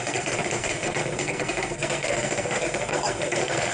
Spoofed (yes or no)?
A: yes